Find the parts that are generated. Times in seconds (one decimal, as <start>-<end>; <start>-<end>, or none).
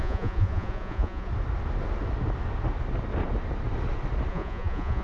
0.0-1.3; 4.3-5.0